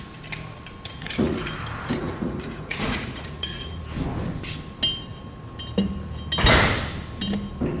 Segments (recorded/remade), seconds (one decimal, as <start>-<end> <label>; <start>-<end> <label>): 0.0-0.9 recorded; 0.9-1.6 remade; 1.6-2.0 recorded; 2.0-3.8 remade; 3.8-7.8 recorded

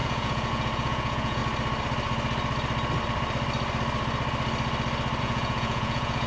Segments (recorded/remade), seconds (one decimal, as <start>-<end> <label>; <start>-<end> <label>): 0.0-1.4 remade; 1.4-5.2 recorded; 5.2-6.3 remade

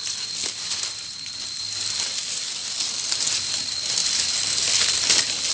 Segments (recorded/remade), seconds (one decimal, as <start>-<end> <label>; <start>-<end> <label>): 0.0-5.5 recorded